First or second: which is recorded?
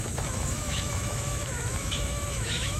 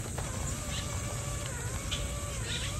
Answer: second